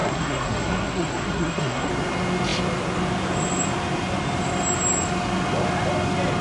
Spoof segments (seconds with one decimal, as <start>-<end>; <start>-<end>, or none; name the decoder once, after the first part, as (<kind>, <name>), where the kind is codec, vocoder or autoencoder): 0.0-1.9 (codec, SNAC)